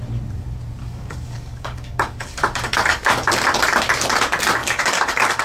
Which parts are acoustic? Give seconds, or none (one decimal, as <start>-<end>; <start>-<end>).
0.0-0.8; 3.3-4.6